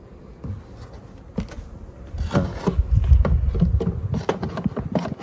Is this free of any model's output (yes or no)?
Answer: yes